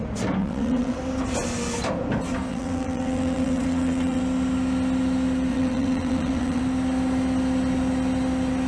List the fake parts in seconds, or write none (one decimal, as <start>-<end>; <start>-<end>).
0.4-1.0; 2.5-4.2; 5.5-6.6